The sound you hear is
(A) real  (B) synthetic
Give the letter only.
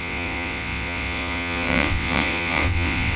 B